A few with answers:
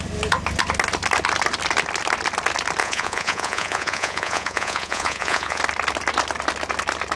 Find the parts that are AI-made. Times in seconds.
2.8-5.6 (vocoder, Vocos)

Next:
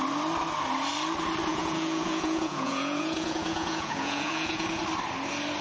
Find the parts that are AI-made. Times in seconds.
1.5-4.8 (vocoder, Vocos)

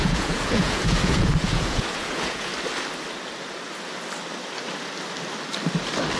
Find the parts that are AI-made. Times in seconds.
0.0-2.5 (vocoder, Vocos)

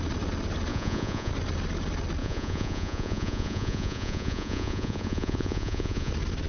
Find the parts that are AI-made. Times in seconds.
0.7-1.3 (vocoder, Vocos); 2.2-6.1